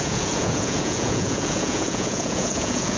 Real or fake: fake